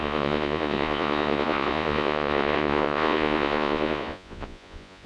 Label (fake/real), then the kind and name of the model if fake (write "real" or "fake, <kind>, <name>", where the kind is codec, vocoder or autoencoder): fake, vocoder, Vocos